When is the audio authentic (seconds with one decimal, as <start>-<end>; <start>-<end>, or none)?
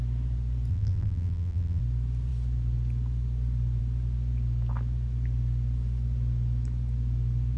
0.0-0.7; 1.8-7.6